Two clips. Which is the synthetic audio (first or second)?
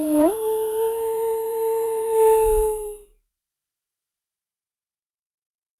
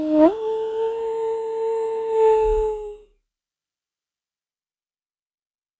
first